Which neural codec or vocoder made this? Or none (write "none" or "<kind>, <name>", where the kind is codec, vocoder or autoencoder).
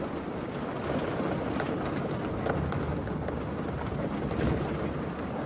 none